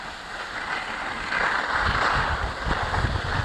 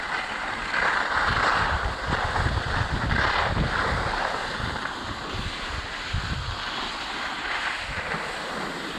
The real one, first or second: first